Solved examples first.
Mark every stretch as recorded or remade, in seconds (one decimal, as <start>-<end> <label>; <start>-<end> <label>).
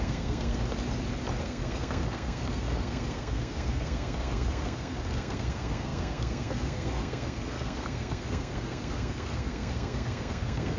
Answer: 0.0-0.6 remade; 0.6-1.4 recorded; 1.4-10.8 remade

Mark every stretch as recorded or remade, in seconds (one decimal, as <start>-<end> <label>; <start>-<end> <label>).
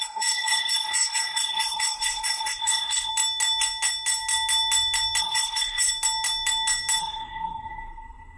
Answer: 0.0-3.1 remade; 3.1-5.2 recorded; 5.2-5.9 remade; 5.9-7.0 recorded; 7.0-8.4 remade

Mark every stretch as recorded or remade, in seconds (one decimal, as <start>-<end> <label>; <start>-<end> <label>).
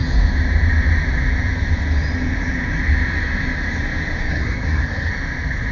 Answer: 0.0-4.3 recorded; 4.3-5.1 remade; 5.1-5.7 recorded